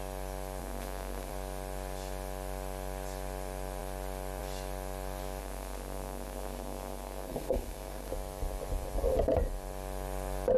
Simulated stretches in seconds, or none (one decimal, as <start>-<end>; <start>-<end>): 0.6-1.3; 5.4-8.1